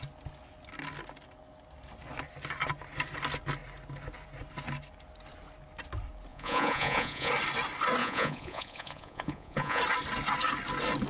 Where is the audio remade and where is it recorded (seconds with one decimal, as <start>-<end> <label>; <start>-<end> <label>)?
0.0-6.3 recorded; 6.3-7.3 remade; 7.3-8.0 recorded; 8.0-9.8 remade; 9.8-11.1 recorded